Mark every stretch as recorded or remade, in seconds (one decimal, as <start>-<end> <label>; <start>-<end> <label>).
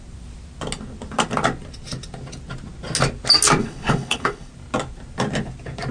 0.0-3.6 recorded; 3.6-4.5 remade; 4.5-5.9 recorded